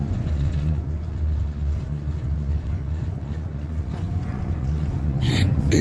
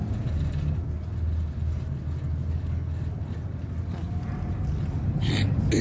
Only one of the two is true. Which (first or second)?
second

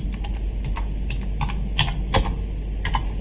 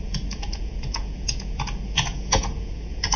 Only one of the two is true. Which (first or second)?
first